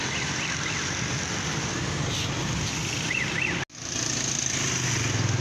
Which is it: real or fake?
real